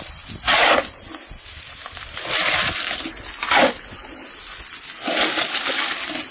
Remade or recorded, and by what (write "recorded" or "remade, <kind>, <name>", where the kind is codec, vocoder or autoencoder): recorded